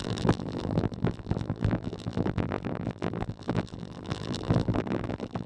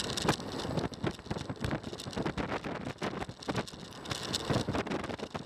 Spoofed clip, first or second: first